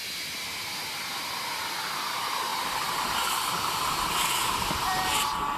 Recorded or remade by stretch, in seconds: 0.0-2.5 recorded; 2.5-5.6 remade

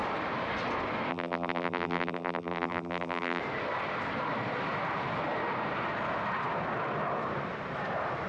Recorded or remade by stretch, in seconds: 0.0-1.1 recorded; 1.1-3.4 remade; 3.4-8.3 recorded

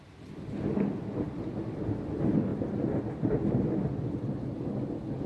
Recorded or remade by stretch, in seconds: 0.0-5.3 recorded

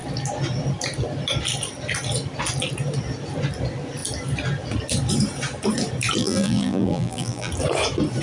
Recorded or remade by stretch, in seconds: 0.0-6.2 recorded; 6.2-7.5 remade; 7.5-8.2 recorded